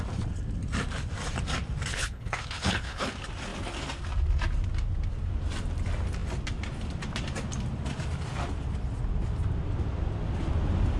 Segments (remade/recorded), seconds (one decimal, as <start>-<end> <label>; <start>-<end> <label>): 0.0-1.9 recorded; 1.9-3.1 remade; 3.1-11.0 recorded